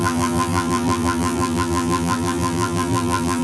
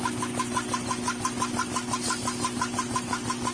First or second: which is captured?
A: second